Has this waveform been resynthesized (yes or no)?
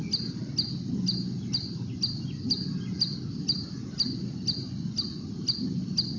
no